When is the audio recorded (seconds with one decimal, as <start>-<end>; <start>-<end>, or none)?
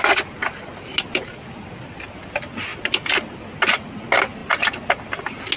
0.0-5.6